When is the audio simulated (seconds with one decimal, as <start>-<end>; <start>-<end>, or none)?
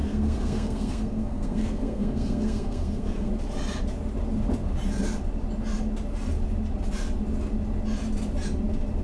0.0-3.3